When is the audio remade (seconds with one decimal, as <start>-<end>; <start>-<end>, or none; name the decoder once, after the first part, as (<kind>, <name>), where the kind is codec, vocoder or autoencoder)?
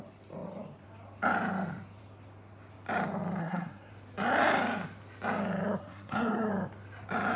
3.4-3.9 (codec, SNAC); 5.8-6.5